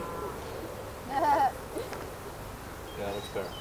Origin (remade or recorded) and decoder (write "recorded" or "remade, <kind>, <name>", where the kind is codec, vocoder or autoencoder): recorded